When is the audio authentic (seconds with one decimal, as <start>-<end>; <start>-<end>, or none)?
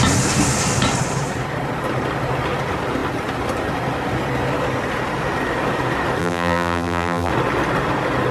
0.0-6.2; 7.3-8.3